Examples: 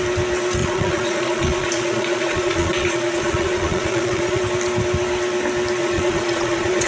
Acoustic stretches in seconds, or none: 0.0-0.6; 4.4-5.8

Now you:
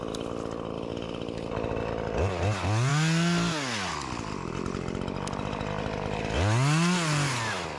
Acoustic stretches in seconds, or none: 0.0-7.8

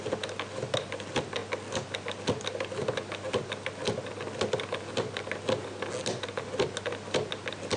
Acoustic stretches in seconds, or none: 0.0-7.8

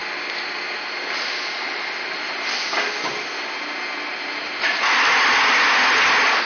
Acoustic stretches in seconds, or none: 0.0-6.5

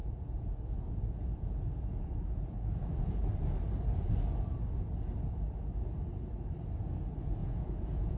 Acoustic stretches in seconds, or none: 3.2-7.4